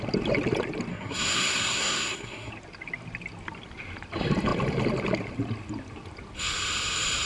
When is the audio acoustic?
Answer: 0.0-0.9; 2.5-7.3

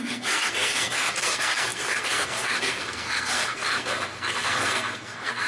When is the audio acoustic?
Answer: none

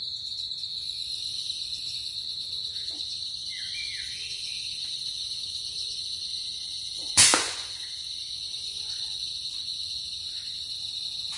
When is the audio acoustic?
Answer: 0.0-0.7; 1.4-5.6; 10.1-11.4